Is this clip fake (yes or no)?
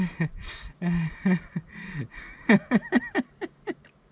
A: no